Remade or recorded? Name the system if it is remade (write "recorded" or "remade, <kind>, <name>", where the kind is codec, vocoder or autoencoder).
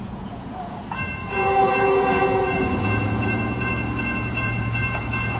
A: remade, vocoder, Vocos